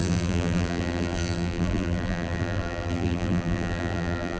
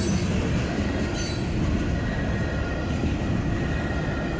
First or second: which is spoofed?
first